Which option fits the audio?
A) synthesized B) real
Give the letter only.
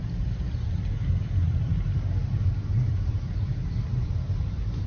A